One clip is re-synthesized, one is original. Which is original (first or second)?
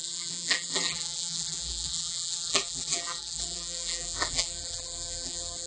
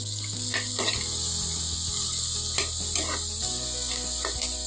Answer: second